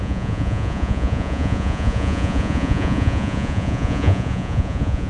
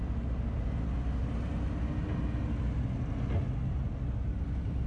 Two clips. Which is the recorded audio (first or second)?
second